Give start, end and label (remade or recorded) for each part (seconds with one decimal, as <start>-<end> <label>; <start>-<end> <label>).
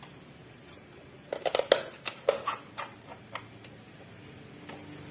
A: 0.0-0.4 recorded; 0.4-1.1 remade; 1.1-3.1 recorded; 3.1-3.8 remade; 3.8-5.1 recorded